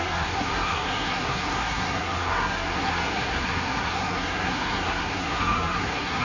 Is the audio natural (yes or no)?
no